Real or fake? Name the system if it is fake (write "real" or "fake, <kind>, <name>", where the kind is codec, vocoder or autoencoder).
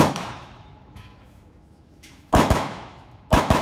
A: fake, autoencoder, DAC-VAE